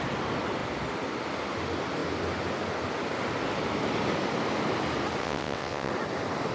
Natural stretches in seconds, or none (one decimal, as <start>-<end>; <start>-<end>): 0.0-5.2; 5.9-6.5